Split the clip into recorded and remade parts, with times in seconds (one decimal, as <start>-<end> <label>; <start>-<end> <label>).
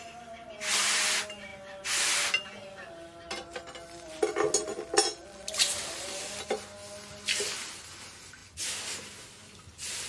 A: 0.0-10.1 recorded